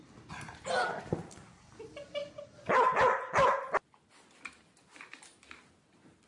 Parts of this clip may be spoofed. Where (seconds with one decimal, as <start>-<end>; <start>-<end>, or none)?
none